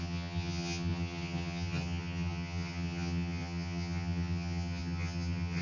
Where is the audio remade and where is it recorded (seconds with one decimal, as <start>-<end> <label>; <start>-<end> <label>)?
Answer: 0.0-5.6 remade